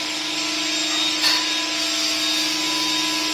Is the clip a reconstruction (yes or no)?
no